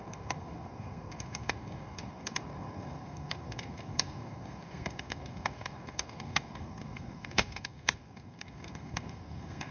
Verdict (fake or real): fake